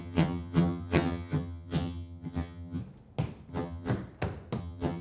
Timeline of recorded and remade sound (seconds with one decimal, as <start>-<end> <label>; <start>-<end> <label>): 0.0-2.8 remade; 2.8-3.5 recorded; 3.5-3.9 remade; 3.9-4.6 recorded; 4.6-5.0 remade

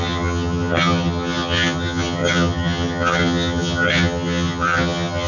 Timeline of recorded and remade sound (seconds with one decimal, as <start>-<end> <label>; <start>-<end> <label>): 0.0-5.3 remade

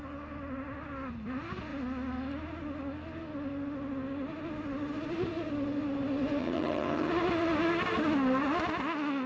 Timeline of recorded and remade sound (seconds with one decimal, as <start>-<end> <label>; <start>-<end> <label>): 0.0-6.4 recorded; 6.4-7.1 remade; 7.1-9.3 recorded

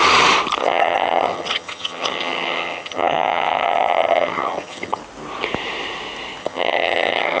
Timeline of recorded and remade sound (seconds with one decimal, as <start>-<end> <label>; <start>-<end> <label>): 0.0-0.6 recorded; 0.6-5.0 remade; 5.0-6.4 recorded; 6.4-7.4 remade

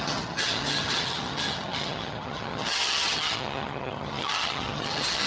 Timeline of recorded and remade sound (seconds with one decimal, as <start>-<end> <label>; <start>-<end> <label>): 0.0-5.3 remade